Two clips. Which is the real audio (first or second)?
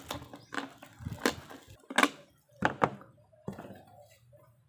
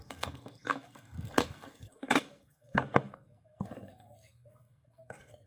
first